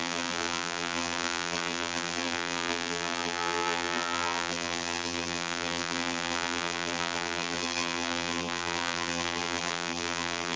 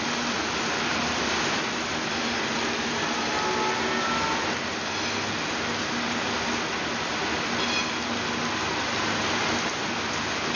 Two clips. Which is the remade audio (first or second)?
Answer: first